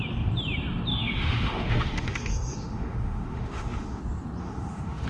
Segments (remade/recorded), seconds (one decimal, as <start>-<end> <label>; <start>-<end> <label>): 0.0-0.9 recorded; 0.9-4.0 remade; 4.0-4.4 recorded; 4.4-5.1 remade